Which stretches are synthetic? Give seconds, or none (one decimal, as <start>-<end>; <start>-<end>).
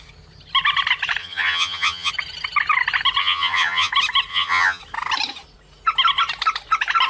1.2-2.1; 3.2-3.9; 4.3-4.8